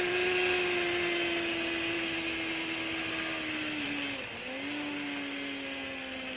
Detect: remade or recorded recorded